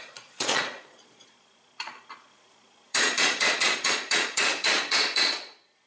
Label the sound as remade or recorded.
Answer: remade